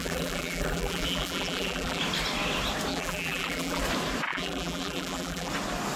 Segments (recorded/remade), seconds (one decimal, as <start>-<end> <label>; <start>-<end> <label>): 0.0-2.0 remade; 2.0-2.9 recorded; 2.9-3.8 remade; 3.8-4.3 recorded; 4.3-5.5 remade; 5.5-6.0 recorded